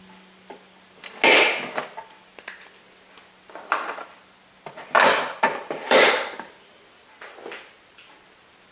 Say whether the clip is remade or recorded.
recorded